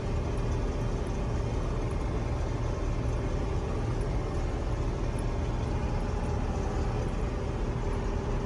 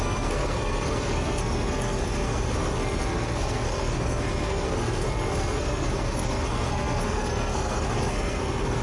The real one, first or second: first